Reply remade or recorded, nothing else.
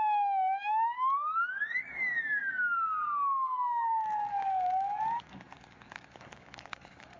remade